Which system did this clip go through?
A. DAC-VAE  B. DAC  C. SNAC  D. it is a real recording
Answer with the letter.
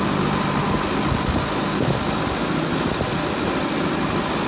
D